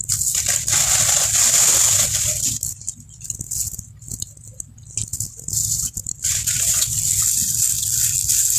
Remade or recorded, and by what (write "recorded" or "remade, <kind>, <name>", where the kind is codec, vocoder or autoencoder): recorded